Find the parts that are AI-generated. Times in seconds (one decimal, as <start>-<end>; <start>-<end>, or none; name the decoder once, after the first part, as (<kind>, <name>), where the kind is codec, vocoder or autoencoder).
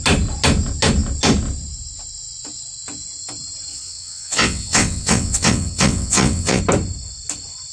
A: 3.7-6.6 (vocoder, WaveNeXt)